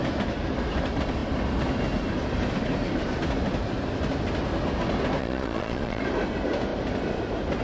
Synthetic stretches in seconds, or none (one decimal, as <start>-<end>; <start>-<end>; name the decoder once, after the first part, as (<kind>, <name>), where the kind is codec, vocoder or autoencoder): 5.2-6.0 (vocoder, Vocos)